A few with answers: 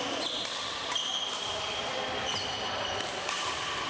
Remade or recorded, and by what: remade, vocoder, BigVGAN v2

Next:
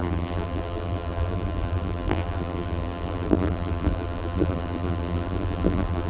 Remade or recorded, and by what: remade, vocoder, BigVGAN v2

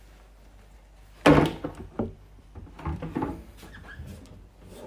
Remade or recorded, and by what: recorded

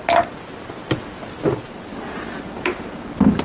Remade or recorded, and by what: recorded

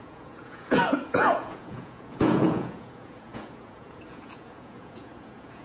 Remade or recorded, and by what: remade, vocoder, Vocos